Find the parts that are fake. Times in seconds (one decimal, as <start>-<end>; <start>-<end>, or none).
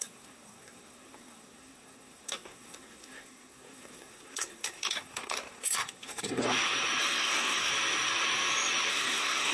0.0-6.4; 7.0-7.7; 8.9-9.5